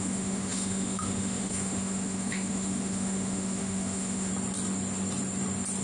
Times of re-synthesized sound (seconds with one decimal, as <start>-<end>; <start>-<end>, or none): 0.0-4.3